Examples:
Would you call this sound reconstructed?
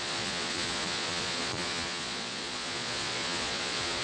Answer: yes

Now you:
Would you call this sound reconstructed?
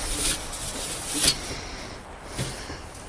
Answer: no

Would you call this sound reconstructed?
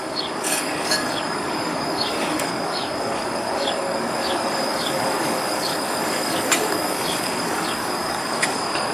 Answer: yes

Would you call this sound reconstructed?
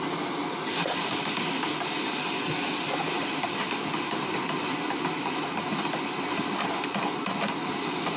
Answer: no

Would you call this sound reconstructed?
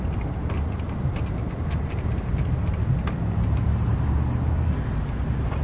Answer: no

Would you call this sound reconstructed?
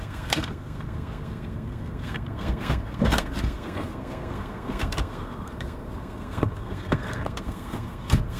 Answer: yes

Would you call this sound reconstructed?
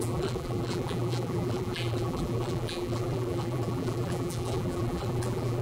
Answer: yes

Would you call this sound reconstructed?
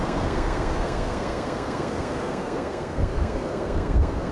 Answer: yes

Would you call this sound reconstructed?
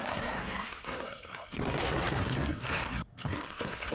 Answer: yes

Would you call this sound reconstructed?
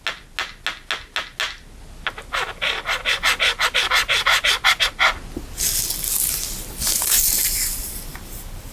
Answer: no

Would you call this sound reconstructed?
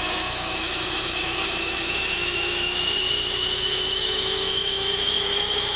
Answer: yes